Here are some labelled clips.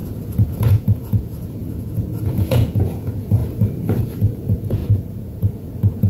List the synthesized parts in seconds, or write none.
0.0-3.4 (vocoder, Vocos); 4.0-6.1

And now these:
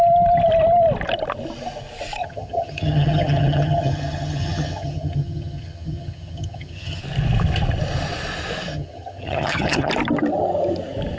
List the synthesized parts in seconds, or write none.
2.2-7.0 (vocoder, HiFi-GAN); 8.7-9.9

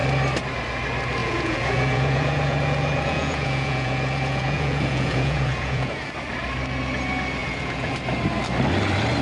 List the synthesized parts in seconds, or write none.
1.2-6.1 (vocoder, Vocos); 7.4-7.9

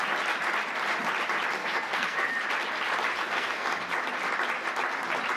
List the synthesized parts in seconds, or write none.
1.6-2.3 (codec, SNAC); 3.2-3.8

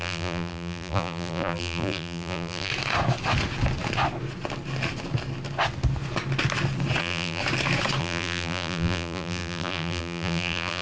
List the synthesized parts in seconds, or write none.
0.0-2.7 (vocoder, BigVGAN v2); 7.0-7.4; 8.0-10.8